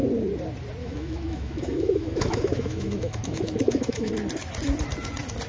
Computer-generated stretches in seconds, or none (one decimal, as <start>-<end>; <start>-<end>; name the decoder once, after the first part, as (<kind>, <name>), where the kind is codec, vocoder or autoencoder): 0.8-4.1 (autoencoder, DAC-VAE)